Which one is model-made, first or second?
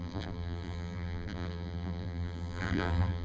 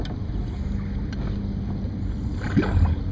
first